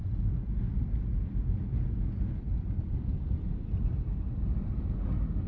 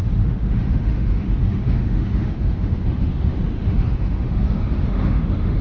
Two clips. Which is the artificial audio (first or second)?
second